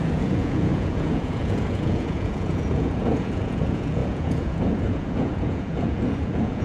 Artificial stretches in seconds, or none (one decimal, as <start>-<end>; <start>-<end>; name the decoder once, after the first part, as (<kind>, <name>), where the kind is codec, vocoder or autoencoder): 0.0-6.6 (vocoder, Vocos)